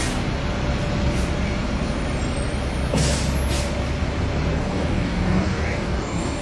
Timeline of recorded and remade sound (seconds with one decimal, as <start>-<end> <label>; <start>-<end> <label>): 0.0-4.5 recorded; 4.5-6.4 remade